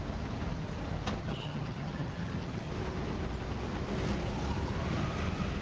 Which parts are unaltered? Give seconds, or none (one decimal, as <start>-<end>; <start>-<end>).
0.0-1.2; 2.7-5.6